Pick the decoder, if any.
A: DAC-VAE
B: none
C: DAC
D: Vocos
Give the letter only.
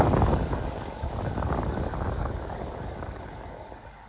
C